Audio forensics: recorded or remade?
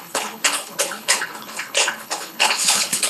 remade